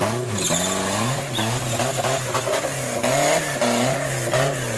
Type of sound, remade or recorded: recorded